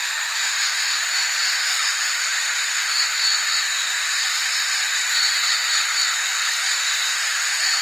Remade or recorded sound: remade